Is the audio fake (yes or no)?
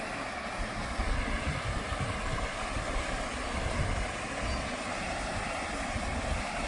no